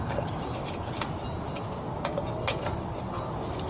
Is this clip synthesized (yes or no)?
no